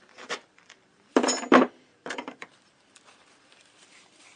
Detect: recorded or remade remade